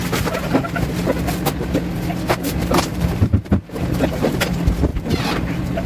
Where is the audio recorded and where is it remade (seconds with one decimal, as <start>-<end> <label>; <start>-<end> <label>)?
0.0-0.8 remade; 0.8-2.6 recorded; 2.6-4.4 remade; 4.4-4.9 recorded; 4.9-5.9 remade